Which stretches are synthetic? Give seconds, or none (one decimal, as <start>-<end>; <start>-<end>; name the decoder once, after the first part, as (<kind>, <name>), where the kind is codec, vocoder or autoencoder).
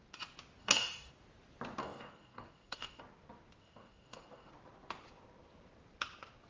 0.6-1.1 (codec, DAC); 1.8-3.0; 3.6-4.5